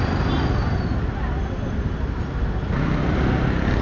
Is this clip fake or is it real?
real